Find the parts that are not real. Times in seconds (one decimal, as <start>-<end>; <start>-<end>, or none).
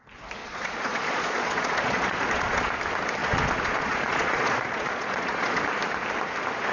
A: 0.4-2.8; 3.2-5.6